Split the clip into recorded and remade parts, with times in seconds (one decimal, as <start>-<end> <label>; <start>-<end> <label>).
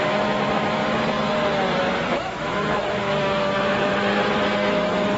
0.0-0.8 remade; 0.8-2.1 recorded; 2.1-3.9 remade; 3.9-5.2 recorded